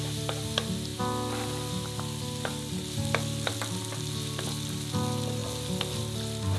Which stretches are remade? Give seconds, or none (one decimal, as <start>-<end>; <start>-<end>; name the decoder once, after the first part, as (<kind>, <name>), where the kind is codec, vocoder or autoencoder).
none